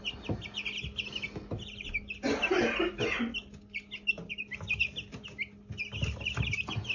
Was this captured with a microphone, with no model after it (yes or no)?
yes